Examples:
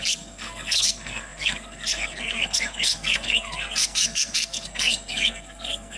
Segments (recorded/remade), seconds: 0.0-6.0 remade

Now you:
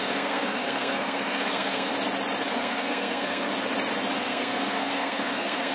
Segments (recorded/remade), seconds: 0.0-1.9 remade; 1.9-2.5 recorded; 2.5-3.5 remade; 3.5-4.2 recorded; 4.2-5.7 remade

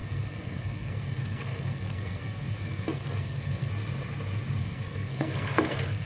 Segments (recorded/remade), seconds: 0.0-3.7 remade; 3.7-4.6 recorded; 4.6-6.1 remade

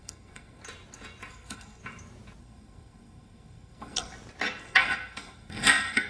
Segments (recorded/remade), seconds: 0.0-0.6 remade; 0.6-1.3 recorded; 1.3-1.8 remade; 1.8-2.4 recorded; 2.4-4.1 remade; 4.1-4.6 recorded; 4.6-6.1 remade